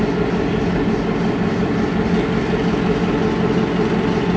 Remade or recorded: recorded